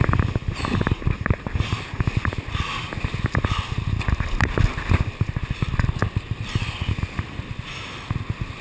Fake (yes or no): no